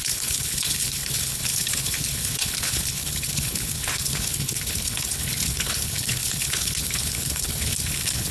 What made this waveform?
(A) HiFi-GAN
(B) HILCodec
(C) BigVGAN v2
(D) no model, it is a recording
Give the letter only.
B